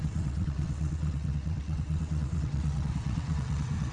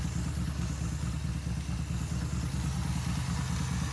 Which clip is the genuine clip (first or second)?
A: second